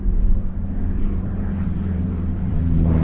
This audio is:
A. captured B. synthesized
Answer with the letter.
B